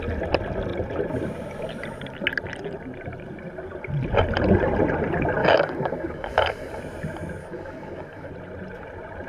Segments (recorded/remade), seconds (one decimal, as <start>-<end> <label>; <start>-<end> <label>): 0.0-5.4 recorded; 5.4-6.8 remade; 6.8-7.4 recorded; 7.4-8.3 remade; 8.3-9.3 recorded